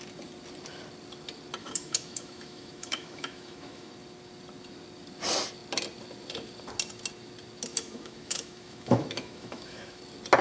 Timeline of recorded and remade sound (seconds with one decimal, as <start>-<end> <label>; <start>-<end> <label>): 0.0-1.6 recorded; 1.6-3.9 remade; 3.9-7.7 recorded; 7.7-10.0 remade; 10.0-10.4 recorded